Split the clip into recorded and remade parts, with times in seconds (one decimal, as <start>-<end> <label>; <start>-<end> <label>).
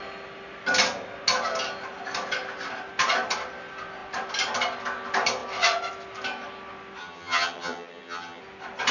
0.0-7.0 recorded; 7.0-8.4 remade; 8.4-8.9 recorded